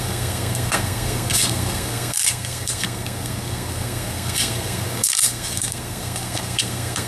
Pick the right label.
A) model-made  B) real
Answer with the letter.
A